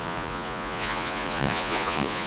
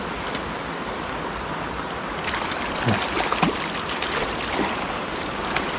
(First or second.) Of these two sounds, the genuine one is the second